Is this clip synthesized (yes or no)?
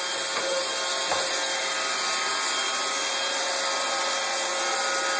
no